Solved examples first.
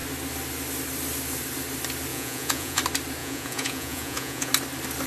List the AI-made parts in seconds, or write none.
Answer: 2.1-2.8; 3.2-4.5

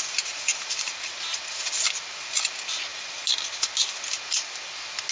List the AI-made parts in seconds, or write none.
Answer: none

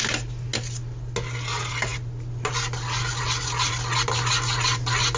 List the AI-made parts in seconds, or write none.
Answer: none

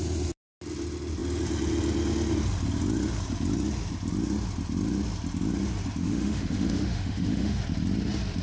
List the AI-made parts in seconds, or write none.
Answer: 6.0-7.6

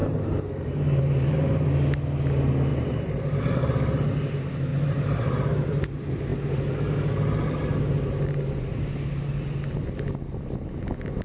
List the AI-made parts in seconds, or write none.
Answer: 0.0-1.7; 2.7-3.5; 4.7-5.8